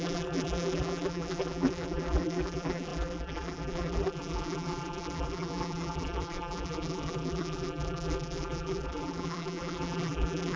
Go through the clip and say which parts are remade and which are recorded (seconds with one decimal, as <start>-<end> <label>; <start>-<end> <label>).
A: 0.0-10.6 remade